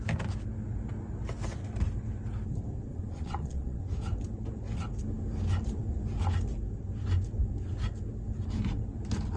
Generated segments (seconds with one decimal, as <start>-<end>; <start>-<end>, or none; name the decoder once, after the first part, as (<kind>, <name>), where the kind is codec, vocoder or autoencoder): 2.9-3.8 (vocoder, Vocos)